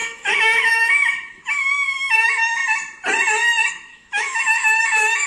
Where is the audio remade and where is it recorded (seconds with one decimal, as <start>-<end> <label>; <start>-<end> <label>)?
0.0-2.6 remade; 2.6-3.7 recorded; 3.7-5.3 remade